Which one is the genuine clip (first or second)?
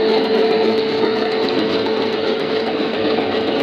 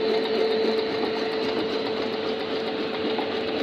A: second